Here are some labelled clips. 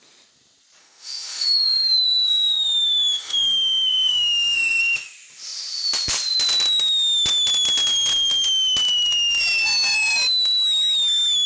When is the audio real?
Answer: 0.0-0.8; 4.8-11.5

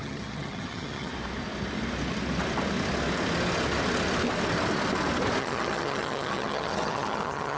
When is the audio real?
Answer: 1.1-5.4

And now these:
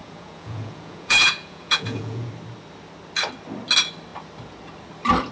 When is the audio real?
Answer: 2.3-5.3

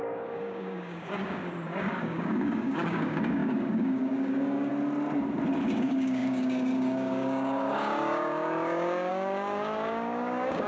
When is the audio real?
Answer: 1.4-2.0; 4.7-5.8

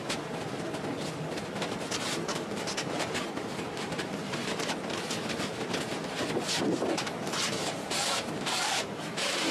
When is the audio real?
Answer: 0.0-2.3; 4.5-7.0